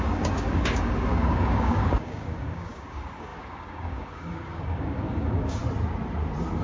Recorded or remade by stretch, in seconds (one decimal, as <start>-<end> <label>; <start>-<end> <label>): 0.0-5.6 remade; 5.6-6.6 recorded